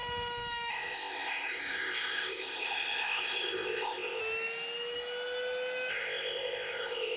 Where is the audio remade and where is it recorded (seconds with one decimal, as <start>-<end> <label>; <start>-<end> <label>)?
0.0-0.7 recorded; 0.7-4.2 remade; 4.2-5.9 recorded; 5.9-7.2 remade